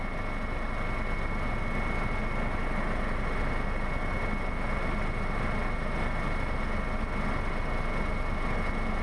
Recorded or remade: recorded